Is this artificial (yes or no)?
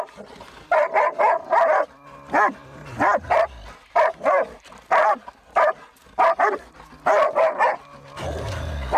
no